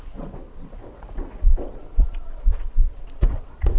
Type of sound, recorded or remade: remade